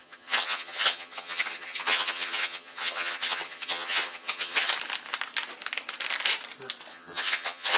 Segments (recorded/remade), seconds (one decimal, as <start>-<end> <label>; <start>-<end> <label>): 0.0-4.7 remade; 4.7-6.9 recorded; 6.9-7.8 remade